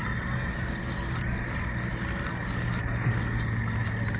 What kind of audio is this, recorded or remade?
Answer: recorded